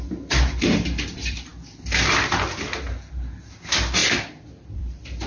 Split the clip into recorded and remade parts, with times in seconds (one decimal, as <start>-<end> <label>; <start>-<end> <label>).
0.0-1.5 remade; 1.5-3.1 recorded; 3.1-4.0 remade; 4.0-4.5 recorded; 4.5-5.3 remade